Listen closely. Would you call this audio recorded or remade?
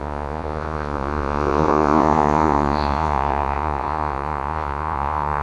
remade